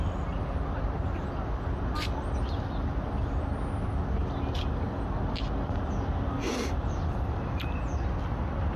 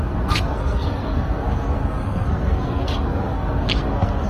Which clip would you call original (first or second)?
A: first